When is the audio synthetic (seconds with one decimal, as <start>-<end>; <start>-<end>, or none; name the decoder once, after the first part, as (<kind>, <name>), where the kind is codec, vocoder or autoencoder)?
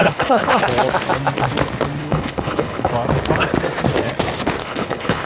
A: 0.0-0.6 (codec, HILCodec); 2.0-2.9; 4.6-5.3